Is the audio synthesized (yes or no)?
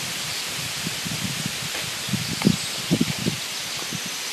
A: no